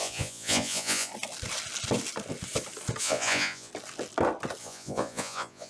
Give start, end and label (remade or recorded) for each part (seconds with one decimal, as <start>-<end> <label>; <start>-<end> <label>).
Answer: 0.0-1.1 remade; 1.1-3.0 recorded; 3.0-3.7 remade; 3.7-4.6 recorded; 4.6-5.7 remade